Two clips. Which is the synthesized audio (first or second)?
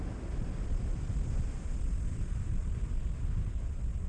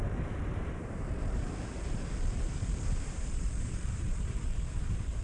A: second